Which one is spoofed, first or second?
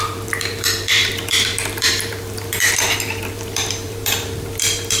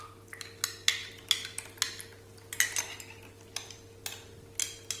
first